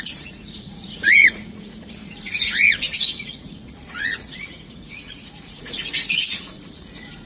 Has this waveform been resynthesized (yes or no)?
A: yes